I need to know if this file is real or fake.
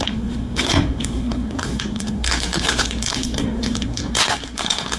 fake